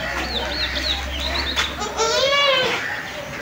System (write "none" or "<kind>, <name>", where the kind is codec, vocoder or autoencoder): none